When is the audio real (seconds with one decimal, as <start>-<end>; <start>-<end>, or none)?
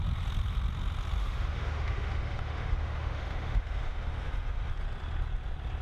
0.0-1.2; 4.7-5.8